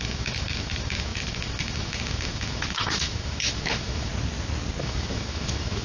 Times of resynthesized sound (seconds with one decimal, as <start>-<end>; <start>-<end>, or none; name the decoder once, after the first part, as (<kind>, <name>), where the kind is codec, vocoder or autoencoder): 0.0-4.1 (autoencoder, DAC-VAE); 4.8-5.8